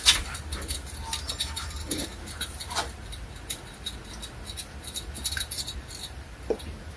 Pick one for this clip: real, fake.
real